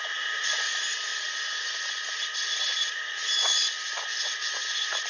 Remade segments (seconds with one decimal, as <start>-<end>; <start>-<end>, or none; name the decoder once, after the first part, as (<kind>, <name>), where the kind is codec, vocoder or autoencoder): 0.0-5.1 (vocoder, Vocos)